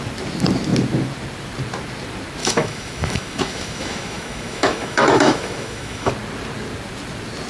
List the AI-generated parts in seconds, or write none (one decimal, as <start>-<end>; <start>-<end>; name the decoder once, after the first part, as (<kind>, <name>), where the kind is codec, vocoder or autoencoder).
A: 2.4-6.1 (autoencoder, DAC-VAE)